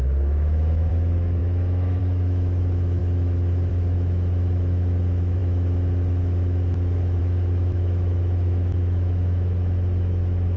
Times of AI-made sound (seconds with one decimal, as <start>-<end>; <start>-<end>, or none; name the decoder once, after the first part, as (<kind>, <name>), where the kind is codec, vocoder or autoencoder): 0.0-10.6 (autoencoder, DAC-VAE)